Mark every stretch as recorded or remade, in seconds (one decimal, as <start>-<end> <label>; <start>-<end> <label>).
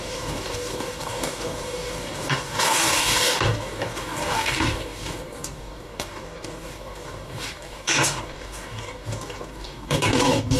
0.0-10.6 remade